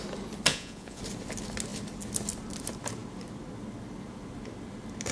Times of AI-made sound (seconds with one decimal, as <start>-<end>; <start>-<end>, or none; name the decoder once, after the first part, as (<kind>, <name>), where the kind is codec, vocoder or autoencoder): 0.5-1.0 (vocoder, Vocos)